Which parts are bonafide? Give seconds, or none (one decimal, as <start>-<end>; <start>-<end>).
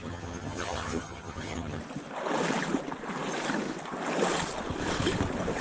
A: 1.8-5.6